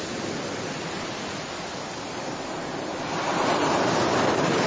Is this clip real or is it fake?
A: real